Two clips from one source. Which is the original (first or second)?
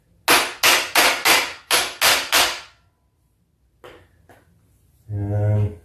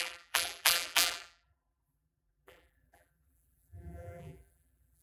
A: first